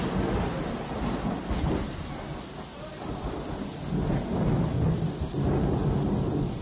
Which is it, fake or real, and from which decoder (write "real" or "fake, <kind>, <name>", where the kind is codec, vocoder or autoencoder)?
real